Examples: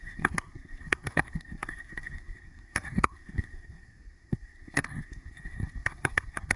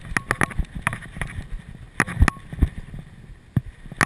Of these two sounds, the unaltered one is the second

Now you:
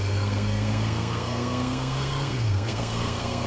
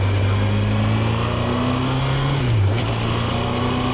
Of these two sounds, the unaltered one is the second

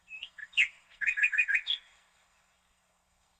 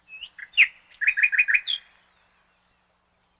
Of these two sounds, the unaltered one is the second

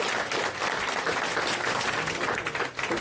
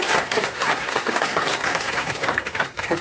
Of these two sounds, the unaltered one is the first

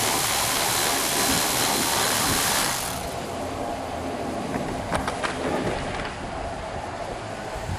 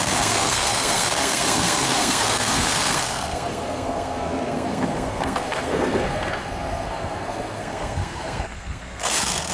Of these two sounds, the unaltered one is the first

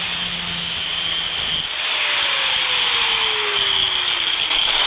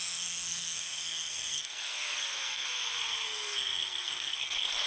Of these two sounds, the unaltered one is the first